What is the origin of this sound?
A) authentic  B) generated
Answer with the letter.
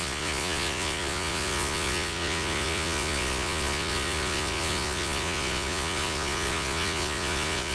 B